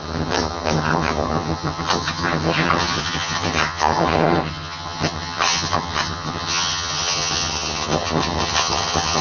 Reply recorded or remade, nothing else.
remade